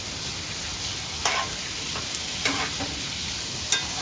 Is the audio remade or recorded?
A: recorded